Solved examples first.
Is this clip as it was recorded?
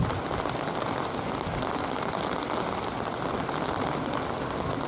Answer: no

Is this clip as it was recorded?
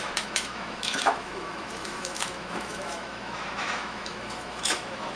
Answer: no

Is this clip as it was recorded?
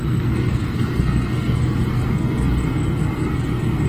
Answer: no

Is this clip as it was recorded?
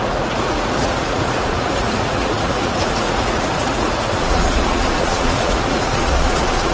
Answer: no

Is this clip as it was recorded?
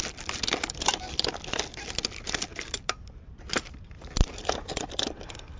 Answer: no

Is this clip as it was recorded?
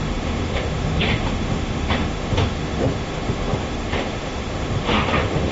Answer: no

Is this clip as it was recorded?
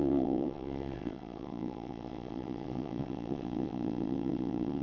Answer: no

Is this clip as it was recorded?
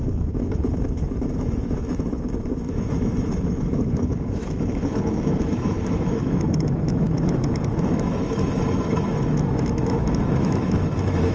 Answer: no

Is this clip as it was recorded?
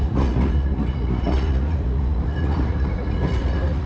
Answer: no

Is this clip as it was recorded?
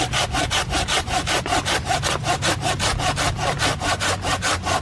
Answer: yes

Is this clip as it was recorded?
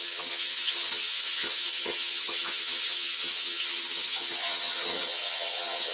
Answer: no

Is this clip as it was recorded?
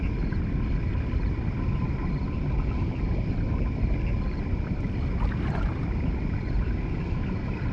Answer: yes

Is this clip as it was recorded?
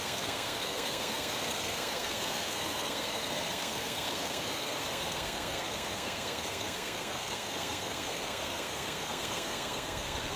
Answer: no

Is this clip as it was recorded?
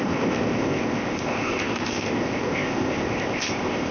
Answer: no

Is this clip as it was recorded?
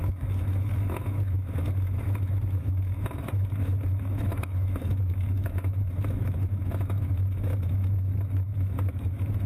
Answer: no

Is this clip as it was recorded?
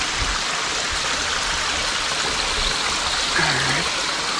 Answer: yes